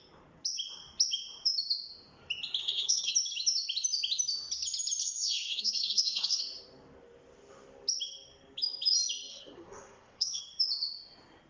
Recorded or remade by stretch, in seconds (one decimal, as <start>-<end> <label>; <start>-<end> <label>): 0.0-2.6 recorded; 2.6-3.1 remade; 3.1-5.0 recorded; 5.0-6.4 remade; 6.4-9.3 recorded; 9.3-10.4 remade; 10.4-11.5 recorded